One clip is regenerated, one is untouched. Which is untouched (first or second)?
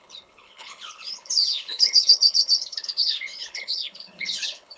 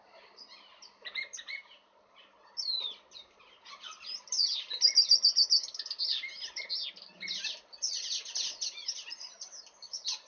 second